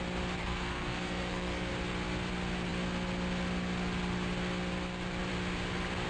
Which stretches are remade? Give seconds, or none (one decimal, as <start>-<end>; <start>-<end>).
0.4-1.7